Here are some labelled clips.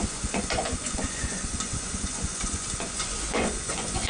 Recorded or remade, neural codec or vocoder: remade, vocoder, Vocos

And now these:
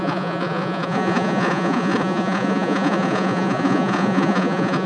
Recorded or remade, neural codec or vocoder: remade, vocoder, Vocos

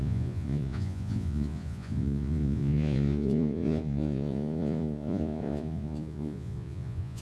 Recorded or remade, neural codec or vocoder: remade, vocoder, Vocos